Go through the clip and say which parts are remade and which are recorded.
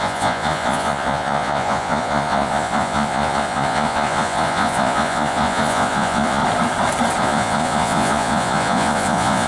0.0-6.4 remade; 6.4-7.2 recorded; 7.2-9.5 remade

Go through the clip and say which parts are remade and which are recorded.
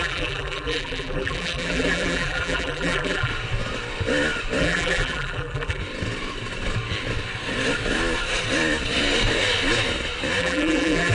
0.0-3.3 remade; 3.3-4.6 recorded; 4.6-5.8 remade; 5.8-10.4 recorded; 10.4-11.1 remade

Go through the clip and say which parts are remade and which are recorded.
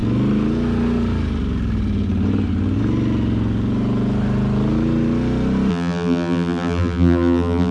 0.0-5.7 recorded; 5.7-7.7 remade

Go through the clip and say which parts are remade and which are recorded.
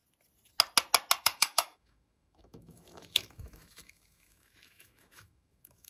0.0-1.2 recorded; 1.2-5.9 remade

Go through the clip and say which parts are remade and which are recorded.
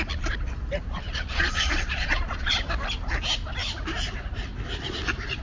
0.0-0.9 recorded; 0.9-2.6 remade; 2.6-5.4 recorded